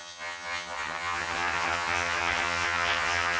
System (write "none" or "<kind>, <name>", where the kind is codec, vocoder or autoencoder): vocoder, HiFi-GAN